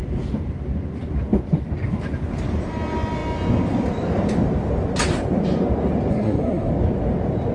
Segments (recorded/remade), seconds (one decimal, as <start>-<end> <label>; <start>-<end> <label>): 0.0-6.1 recorded; 6.1-6.7 remade; 6.7-7.5 recorded